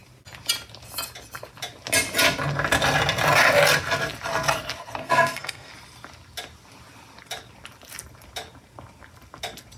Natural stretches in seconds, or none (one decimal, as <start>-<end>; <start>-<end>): 0.0-5.0; 5.7-9.8